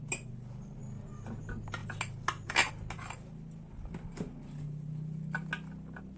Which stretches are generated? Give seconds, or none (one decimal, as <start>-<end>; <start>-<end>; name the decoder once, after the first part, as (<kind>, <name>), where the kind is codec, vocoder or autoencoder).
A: none